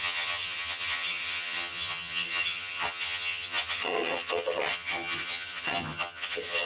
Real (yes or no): no